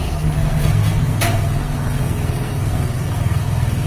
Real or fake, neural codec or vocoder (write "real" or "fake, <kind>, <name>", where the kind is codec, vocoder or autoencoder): fake, codec, SNAC